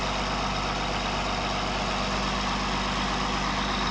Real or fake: real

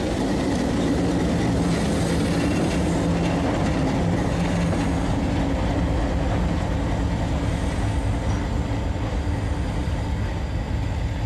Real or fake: real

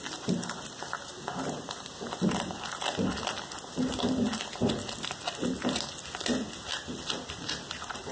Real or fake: real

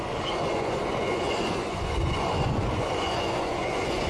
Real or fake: fake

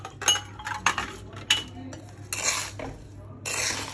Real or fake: real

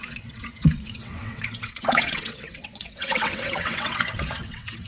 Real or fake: fake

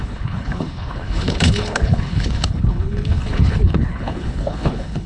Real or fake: fake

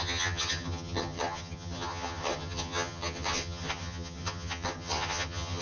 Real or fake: fake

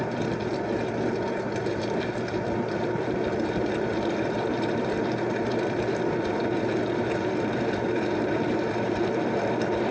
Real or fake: fake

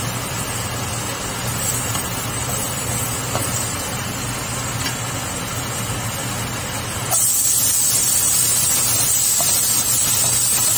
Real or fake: real